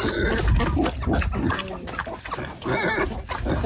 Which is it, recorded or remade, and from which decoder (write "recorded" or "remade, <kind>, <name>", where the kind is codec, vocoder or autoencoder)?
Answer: recorded